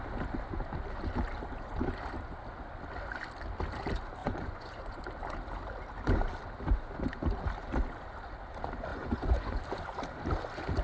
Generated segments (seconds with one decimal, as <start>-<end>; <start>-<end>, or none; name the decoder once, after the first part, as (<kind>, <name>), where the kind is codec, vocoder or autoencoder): 4.2-5.0 (vocoder, Vocos); 8.9-9.6